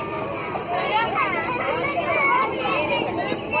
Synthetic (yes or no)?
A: no